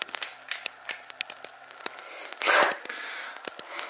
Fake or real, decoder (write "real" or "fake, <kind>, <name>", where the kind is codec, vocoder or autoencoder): real